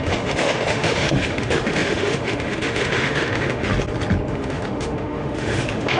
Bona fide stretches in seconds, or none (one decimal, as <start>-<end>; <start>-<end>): 3.7-4.3